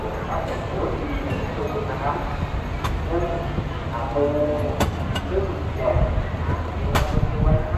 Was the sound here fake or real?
real